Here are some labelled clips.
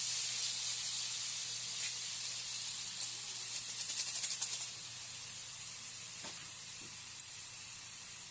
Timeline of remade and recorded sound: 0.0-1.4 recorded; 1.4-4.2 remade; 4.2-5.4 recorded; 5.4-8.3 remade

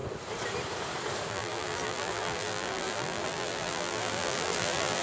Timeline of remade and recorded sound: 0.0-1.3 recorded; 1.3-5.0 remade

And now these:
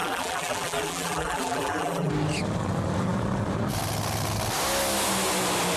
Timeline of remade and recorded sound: 0.0-2.1 remade; 2.1-5.8 recorded

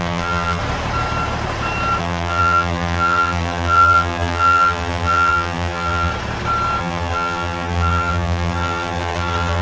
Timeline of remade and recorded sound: 0.0-0.6 remade; 0.6-2.0 recorded; 2.0-6.1 remade; 6.1-6.8 recorded; 6.8-9.6 remade

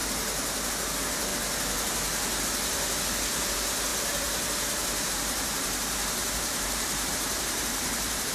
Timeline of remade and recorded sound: 0.0-3.9 recorded; 3.9-8.3 remade